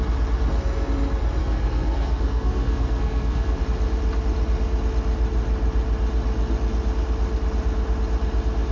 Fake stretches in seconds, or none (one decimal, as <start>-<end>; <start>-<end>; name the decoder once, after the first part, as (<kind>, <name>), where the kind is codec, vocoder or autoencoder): 1.4-3.6 (codec, SNAC)